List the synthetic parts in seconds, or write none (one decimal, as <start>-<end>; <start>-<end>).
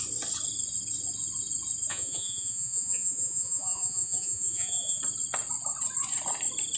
1.9-5.0